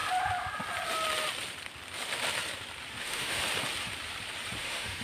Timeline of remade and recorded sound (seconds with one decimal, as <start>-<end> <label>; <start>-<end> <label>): 0.0-3.0 recorded; 3.0-3.4 remade; 3.4-4.6 recorded; 4.6-5.0 remade